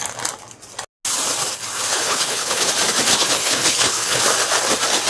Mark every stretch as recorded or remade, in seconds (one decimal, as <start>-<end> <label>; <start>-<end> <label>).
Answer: 0.0-1.9 recorded; 1.9-2.7 remade; 2.7-3.1 recorded; 3.1-4.2 remade; 4.2-5.1 recorded